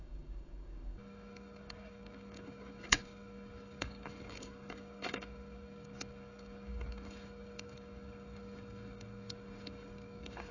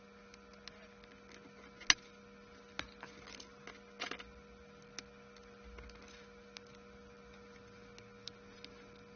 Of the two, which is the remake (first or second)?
first